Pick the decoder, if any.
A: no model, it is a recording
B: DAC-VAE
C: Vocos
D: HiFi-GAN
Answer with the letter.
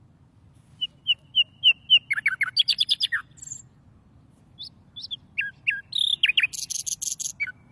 A